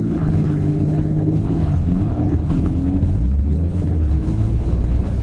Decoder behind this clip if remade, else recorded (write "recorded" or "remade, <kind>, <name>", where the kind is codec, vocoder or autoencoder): remade, codec, HILCodec